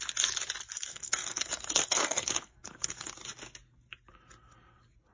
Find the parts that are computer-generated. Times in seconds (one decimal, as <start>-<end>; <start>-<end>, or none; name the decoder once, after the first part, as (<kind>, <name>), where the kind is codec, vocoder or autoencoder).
0.7-3.1 (codec, SNAC)